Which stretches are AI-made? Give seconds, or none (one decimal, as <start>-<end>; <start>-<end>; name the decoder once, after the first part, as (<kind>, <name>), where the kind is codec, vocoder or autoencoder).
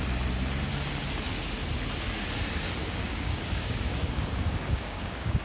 2.8-5.4 (codec, DAC)